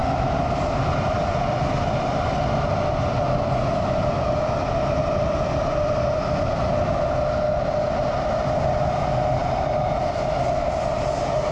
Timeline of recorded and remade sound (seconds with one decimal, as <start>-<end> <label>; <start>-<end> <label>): 0.0-11.5 recorded